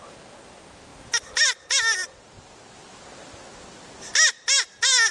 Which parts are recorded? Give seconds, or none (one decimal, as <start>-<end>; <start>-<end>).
0.0-5.1